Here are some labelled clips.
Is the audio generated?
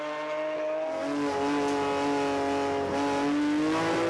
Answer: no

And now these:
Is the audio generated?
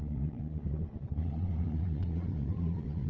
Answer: yes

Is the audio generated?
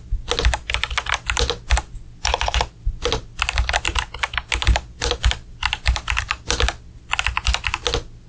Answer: no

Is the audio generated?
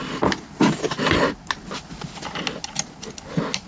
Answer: no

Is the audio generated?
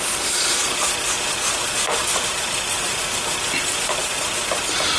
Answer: no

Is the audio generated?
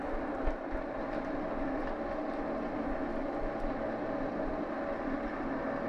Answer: no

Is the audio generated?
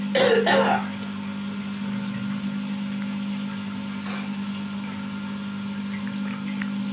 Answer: no